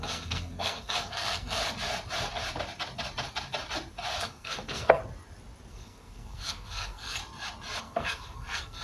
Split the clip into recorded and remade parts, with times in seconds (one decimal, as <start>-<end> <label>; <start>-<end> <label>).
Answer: 0.0-1.6 remade; 1.6-4.2 recorded; 4.2-5.0 remade; 5.0-5.7 recorded; 5.7-7.2 remade; 7.2-7.8 recorded; 7.8-8.8 remade